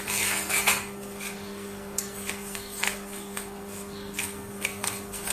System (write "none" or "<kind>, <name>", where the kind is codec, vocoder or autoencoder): codec, SNAC